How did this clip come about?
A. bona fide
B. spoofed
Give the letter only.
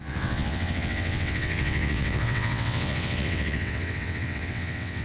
B